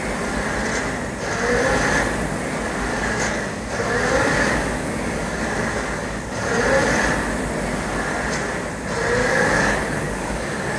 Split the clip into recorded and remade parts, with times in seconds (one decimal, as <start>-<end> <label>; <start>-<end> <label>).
0.0-2.9 recorded; 2.9-6.6 remade; 6.6-9.2 recorded; 9.2-10.8 remade